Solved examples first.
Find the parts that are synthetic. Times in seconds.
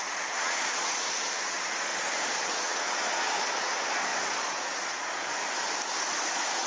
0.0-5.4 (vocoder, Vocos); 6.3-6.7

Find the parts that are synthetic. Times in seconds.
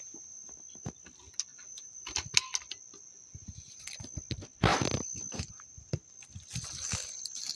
none